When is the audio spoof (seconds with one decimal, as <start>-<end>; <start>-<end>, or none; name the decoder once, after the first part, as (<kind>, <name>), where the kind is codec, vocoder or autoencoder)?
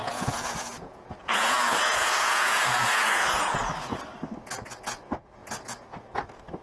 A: 0.0-4.0 (vocoder, Vocos)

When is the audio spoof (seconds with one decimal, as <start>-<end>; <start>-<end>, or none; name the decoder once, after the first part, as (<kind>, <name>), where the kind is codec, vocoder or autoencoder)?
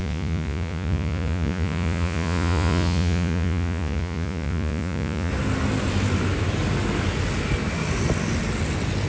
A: 0.0-5.3 (vocoder, Vocos)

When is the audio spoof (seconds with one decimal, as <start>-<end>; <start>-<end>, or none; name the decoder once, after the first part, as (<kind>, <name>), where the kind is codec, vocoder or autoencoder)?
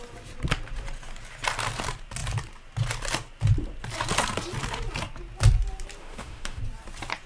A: 6.0-6.6 (autoencoder, DAC-VAE)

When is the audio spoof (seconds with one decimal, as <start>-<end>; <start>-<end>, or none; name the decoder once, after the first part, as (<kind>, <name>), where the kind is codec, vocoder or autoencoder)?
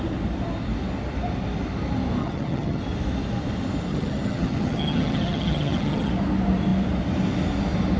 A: 2.2-2.8 (vocoder, HiFi-GAN); 3.9-6.1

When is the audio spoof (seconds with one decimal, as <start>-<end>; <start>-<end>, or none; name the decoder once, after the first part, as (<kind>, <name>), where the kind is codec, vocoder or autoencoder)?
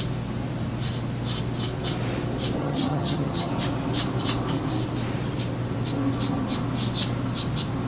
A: 2.6-3.5 (vocoder, HiFi-GAN)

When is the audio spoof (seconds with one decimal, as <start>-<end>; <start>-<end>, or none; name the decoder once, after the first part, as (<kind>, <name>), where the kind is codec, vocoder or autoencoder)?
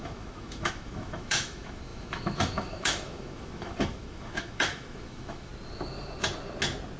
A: 0.0-5.5 (autoencoder, DAC-VAE)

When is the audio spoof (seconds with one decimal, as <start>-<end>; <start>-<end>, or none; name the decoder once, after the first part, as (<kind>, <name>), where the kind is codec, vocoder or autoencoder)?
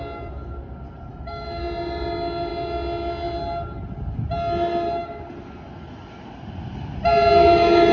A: 1.1-1.6 (autoencoder, DAC-VAE)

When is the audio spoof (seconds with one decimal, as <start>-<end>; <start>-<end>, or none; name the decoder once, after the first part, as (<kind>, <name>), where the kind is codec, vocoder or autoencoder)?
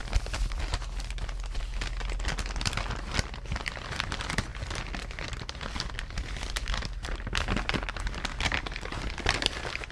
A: 2.7-9.9 (vocoder, BigVGAN v2)